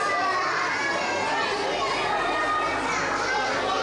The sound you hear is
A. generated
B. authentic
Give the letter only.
B